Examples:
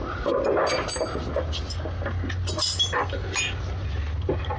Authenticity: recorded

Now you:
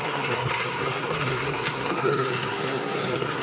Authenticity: remade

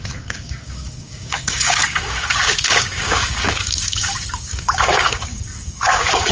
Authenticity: remade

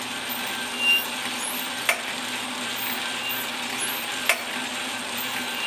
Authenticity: recorded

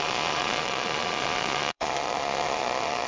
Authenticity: remade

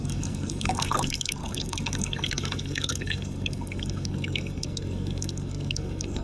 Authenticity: remade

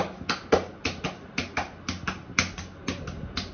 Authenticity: recorded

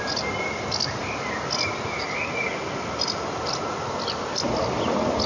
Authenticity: recorded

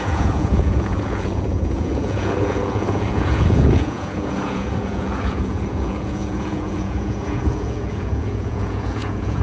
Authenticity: remade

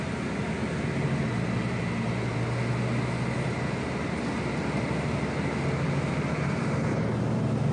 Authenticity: recorded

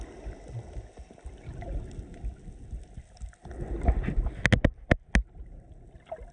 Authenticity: recorded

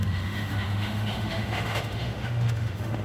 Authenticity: remade